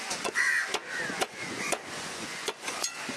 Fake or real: fake